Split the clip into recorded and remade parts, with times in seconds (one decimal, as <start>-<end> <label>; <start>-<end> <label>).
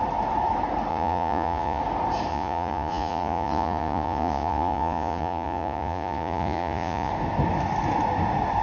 0.0-0.9 recorded; 0.9-1.8 remade; 1.8-2.3 recorded; 2.3-7.1 remade; 7.1-8.6 recorded